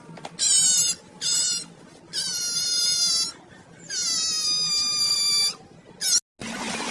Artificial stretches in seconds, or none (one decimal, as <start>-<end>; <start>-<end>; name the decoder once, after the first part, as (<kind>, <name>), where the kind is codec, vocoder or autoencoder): none